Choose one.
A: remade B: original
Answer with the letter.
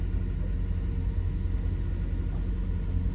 B